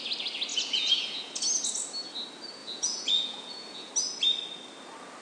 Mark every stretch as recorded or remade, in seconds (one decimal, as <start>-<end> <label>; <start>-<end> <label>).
0.0-0.5 recorded; 0.5-1.3 remade; 1.3-2.6 recorded; 2.6-3.9 remade; 3.9-5.2 recorded